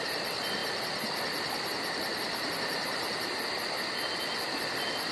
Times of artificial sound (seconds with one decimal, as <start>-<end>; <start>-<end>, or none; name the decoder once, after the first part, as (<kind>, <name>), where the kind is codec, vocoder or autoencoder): none